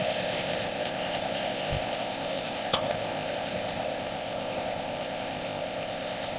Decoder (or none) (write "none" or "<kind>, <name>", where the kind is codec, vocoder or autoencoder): codec, ZipCodec